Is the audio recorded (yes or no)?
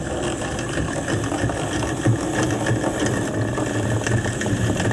yes